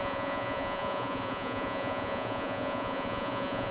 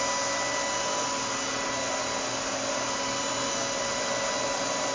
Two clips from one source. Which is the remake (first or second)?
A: first